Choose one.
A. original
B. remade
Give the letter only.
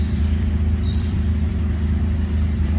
B